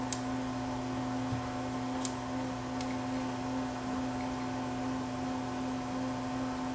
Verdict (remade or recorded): recorded